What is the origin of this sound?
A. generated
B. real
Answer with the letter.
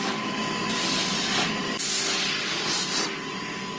B